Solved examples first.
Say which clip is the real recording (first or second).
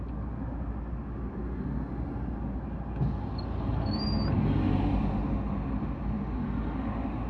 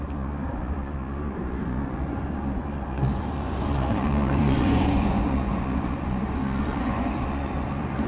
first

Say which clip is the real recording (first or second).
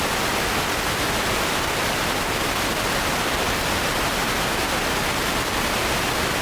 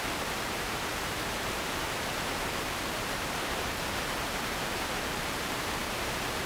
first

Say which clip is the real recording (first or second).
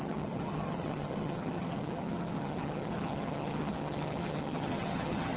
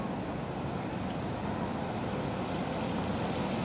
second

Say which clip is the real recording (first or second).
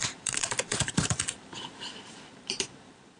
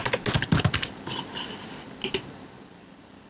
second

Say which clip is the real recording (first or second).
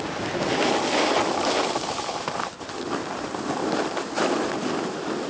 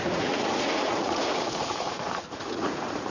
first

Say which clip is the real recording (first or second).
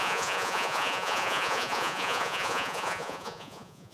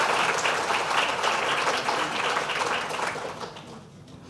second